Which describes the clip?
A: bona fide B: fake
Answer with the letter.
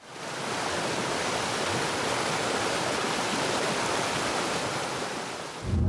A